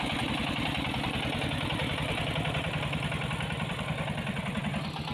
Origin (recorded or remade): recorded